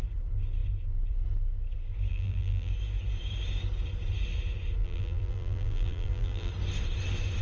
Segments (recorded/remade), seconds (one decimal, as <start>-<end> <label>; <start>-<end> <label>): 0.0-2.1 recorded; 2.1-2.7 remade; 2.7-4.8 recorded; 4.8-6.5 remade; 6.5-7.4 recorded